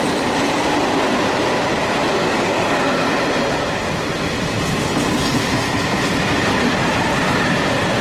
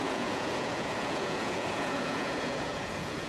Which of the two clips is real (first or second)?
first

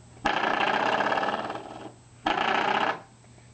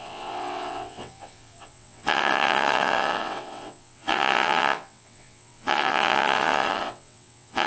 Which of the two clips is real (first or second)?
first